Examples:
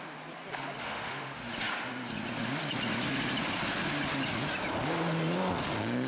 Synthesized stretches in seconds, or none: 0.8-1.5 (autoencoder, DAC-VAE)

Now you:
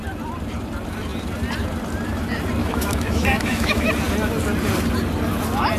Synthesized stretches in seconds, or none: 2.6-3.9 (autoencoder, DAC-VAE)